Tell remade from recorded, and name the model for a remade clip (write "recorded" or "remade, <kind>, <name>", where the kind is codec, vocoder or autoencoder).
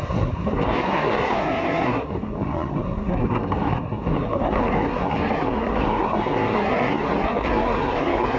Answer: remade, codec, SNAC